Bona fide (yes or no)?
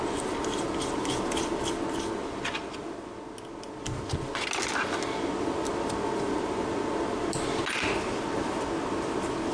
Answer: yes